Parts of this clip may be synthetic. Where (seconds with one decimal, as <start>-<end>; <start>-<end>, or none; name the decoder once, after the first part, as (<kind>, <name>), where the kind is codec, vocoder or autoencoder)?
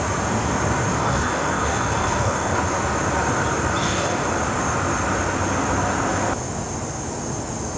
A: 1.0-2.6 (codec, DAC); 3.8-4.3